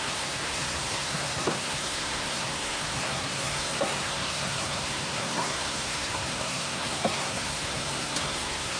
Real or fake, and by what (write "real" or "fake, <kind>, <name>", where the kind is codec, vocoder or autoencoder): fake, codec, SNAC